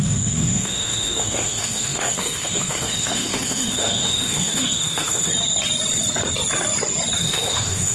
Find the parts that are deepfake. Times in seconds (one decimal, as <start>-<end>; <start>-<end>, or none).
0.0-5.3; 7.2-7.9